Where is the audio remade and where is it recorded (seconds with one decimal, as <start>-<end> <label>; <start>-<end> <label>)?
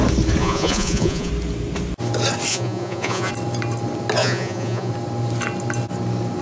0.0-0.4 recorded; 0.4-1.3 remade; 1.3-2.5 recorded; 2.5-3.3 remade; 3.3-4.2 recorded; 4.2-4.9 remade; 4.9-6.4 recorded